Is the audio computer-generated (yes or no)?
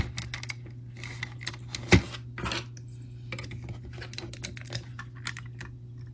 no